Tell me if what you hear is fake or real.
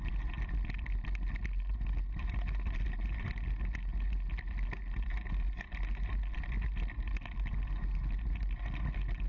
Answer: real